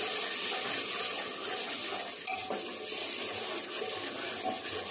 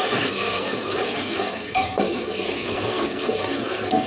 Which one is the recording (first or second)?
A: first